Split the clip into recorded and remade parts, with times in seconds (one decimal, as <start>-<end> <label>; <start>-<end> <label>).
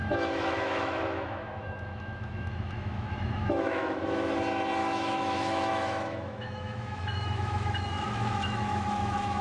0.0-4.3 remade; 4.3-4.8 recorded; 4.8-9.4 remade